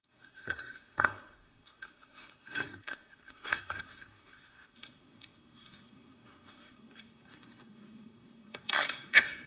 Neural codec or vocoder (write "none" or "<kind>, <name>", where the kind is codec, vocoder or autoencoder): codec, SNAC